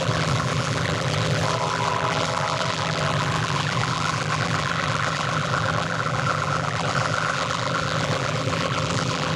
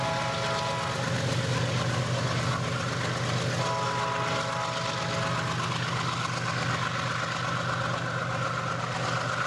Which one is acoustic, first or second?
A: second